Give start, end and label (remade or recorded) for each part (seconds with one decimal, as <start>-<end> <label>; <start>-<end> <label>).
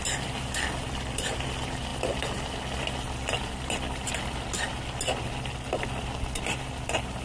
0.0-7.2 recorded